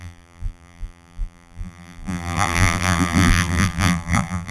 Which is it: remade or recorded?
remade